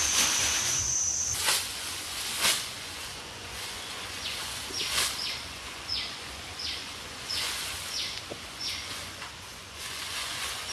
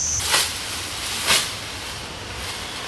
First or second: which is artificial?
first